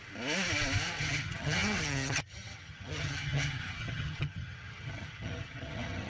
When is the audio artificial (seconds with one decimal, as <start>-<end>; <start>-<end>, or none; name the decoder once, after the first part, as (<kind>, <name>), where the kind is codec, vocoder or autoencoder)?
1.0-6.1 (vocoder, HiFi-GAN)